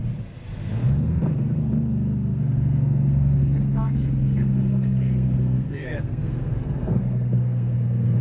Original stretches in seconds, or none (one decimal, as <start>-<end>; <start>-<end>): 0.0-0.7